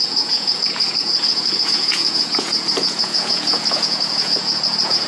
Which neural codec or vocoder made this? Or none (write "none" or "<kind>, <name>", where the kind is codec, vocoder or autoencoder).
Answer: vocoder, Vocos